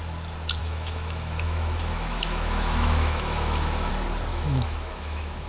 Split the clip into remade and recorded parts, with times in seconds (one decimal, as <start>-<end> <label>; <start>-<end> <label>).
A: 0.0-0.6 recorded; 0.6-3.9 remade; 3.9-4.3 recorded; 4.3-5.5 remade